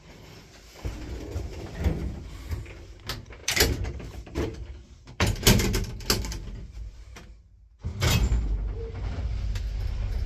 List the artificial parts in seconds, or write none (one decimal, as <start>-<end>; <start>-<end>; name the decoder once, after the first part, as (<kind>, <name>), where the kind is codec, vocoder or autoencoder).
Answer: 3.4-5.4 (vocoder, BigVGAN v2)